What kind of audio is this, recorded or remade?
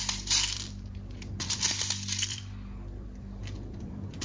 remade